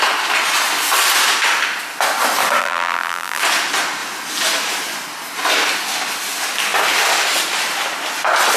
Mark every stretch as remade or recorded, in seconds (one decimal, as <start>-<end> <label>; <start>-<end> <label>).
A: 0.0-2.6 recorded; 2.6-3.4 remade; 3.4-8.6 recorded